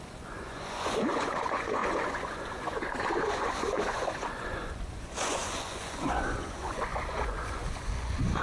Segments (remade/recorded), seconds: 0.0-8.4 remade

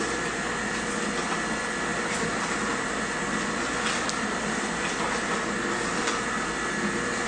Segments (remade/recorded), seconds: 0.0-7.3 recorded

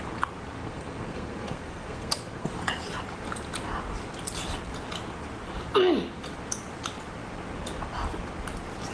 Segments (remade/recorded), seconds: 0.0-0.6 recorded; 0.6-2.5 remade; 2.5-8.9 recorded

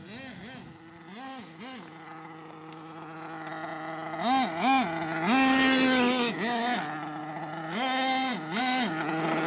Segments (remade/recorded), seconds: 0.0-9.5 recorded

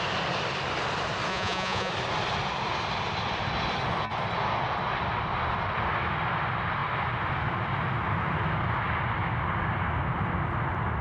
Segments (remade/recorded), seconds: 0.0-1.3 recorded; 1.3-1.9 remade; 1.9-11.0 recorded

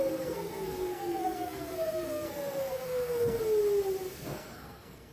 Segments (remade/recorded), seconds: 0.0-3.4 remade; 3.4-4.1 recorded; 4.1-5.1 remade